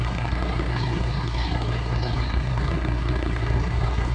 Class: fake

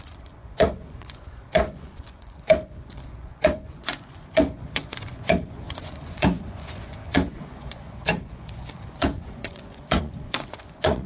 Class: fake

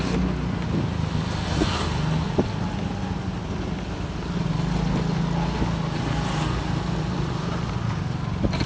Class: real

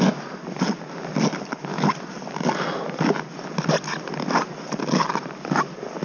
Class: real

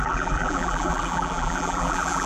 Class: fake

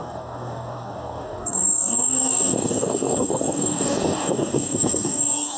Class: fake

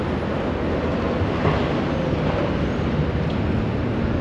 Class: real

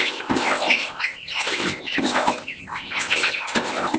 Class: fake